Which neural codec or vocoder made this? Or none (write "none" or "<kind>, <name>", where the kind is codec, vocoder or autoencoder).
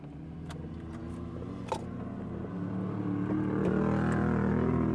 none